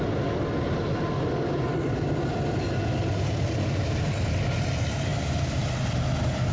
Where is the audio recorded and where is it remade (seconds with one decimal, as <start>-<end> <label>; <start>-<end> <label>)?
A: 0.0-5.1 recorded; 5.1-5.7 remade; 5.7-6.5 recorded